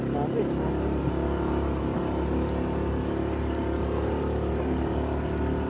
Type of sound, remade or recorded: recorded